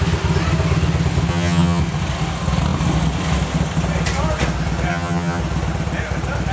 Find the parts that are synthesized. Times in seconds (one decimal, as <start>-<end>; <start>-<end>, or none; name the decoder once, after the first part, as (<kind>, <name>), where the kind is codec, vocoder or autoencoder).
1.3-1.8 (vocoder, HiFi-GAN); 4.9-5.4